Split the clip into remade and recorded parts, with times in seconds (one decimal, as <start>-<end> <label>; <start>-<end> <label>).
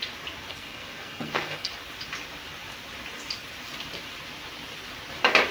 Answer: 0.0-0.5 recorded; 0.5-1.7 remade; 1.7-5.5 recorded